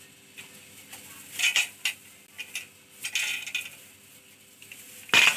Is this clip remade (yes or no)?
no